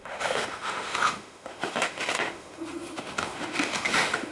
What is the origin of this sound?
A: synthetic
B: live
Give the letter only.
A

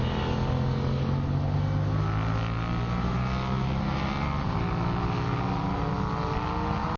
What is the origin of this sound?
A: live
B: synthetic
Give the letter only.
A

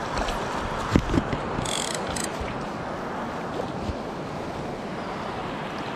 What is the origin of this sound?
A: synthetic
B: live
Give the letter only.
B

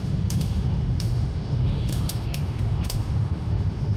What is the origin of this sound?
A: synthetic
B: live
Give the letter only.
A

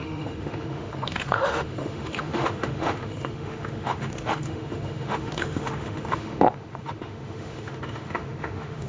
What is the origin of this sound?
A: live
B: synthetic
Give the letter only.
B